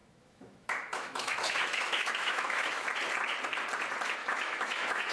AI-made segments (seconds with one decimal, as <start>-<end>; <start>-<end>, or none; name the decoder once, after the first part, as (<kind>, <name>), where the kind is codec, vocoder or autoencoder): 0.0-2.9 (autoencoder, DAC-VAE); 4.2-5.1